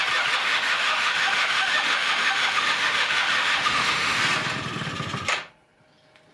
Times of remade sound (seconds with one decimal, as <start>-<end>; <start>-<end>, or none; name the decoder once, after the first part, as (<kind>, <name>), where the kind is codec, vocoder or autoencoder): 0.4-4.2 (autoencoder, DAC-VAE)